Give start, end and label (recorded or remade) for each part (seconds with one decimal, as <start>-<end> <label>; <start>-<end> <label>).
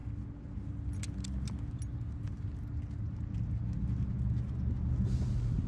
0.0-5.7 recorded